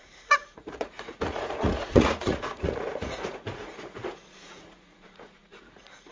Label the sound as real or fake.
fake